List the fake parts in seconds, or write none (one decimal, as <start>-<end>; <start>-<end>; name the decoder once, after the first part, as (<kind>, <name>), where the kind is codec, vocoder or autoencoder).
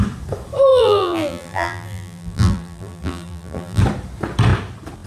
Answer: 0.7-3.8 (vocoder, BigVGAN v2)